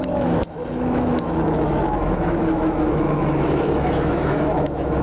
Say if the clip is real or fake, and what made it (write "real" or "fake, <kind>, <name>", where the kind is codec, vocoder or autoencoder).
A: fake, autoencoder, DAC-VAE